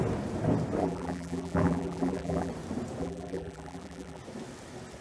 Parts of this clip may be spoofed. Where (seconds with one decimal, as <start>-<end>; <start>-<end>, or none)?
0.8-2.5; 3.0-4.2